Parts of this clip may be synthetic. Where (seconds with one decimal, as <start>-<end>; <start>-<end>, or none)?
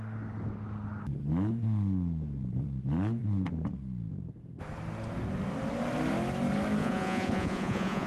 6.8-8.1